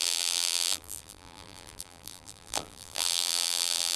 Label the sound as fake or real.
fake